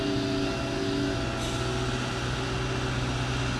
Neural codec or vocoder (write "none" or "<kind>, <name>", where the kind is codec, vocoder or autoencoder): none